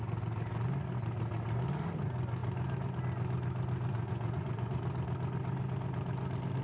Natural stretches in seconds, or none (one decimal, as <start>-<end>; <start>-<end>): 0.0-3.9; 4.8-6.6